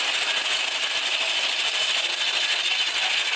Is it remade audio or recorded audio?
recorded